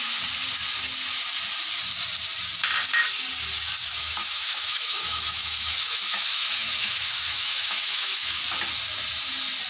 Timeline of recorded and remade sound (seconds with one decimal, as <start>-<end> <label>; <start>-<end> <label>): 0.0-3.9 recorded; 3.9-8.4 remade; 8.4-9.7 recorded